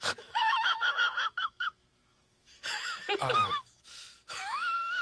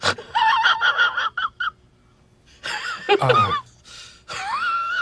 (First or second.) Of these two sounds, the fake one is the first